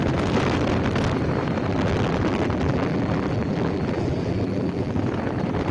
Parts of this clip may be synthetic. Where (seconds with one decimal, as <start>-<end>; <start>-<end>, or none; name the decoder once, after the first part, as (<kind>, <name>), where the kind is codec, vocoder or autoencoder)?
1.6-5.0 (vocoder, BigVGAN v2)